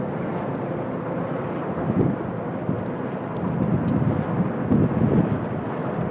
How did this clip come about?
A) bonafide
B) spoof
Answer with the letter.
A